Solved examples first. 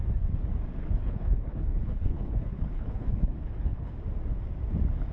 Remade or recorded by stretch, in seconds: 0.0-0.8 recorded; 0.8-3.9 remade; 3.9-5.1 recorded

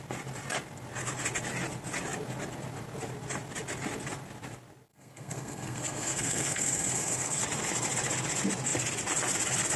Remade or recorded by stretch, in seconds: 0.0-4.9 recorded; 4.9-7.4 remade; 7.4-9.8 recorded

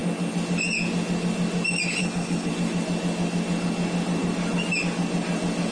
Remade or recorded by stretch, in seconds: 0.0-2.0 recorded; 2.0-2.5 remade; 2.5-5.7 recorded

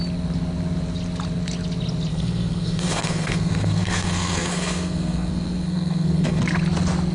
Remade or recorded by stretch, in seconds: 0.0-2.1 recorded; 2.1-6.4 remade; 6.4-7.1 recorded